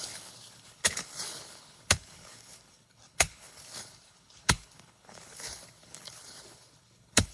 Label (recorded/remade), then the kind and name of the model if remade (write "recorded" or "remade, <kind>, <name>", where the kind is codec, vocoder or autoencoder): remade, codec, HILCodec